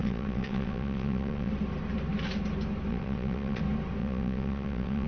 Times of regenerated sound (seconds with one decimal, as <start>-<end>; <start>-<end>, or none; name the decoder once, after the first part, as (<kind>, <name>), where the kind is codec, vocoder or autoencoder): 0.0-1.5 (vocoder, WaveNeXt); 2.9-3.6; 4.0-5.1